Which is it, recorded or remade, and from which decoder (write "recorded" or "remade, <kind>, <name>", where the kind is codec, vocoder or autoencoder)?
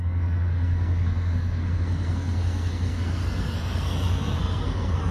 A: remade, codec, SNAC